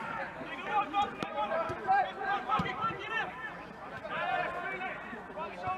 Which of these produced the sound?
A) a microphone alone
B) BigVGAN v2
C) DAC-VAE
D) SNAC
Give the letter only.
B